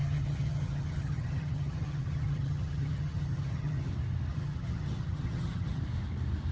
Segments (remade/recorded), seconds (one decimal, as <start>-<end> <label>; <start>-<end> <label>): 0.0-3.9 remade; 3.9-4.3 recorded; 4.3-5.8 remade; 5.8-6.5 recorded